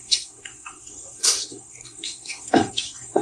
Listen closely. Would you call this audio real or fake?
fake